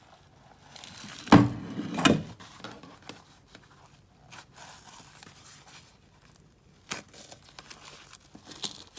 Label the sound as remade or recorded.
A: recorded